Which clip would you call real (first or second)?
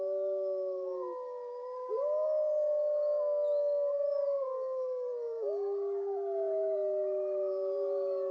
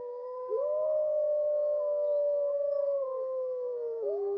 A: first